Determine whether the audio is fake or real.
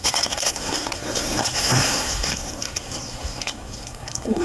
fake